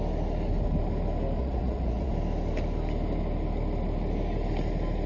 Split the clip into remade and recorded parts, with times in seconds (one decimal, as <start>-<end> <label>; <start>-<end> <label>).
0.0-1.4 recorded; 1.4-2.1 remade; 2.1-5.1 recorded